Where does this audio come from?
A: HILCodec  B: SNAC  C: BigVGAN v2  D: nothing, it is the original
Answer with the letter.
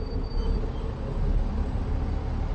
D